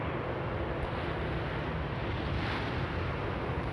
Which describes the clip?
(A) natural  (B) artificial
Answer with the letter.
A